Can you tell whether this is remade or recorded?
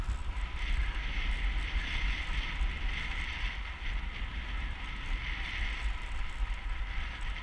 recorded